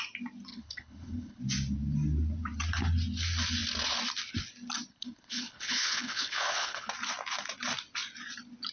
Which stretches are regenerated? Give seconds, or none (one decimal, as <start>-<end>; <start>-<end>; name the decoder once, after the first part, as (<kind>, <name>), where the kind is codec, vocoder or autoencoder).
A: 0.5-1.4 (codec, HILCodec); 4.9-6.9